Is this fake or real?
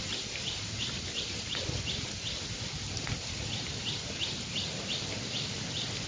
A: real